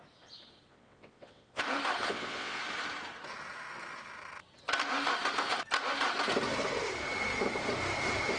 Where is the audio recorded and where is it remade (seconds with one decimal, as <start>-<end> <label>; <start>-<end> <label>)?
0.0-0.7 recorded; 0.7-1.6 remade; 1.6-2.1 recorded; 2.1-2.6 remade; 2.6-8.4 recorded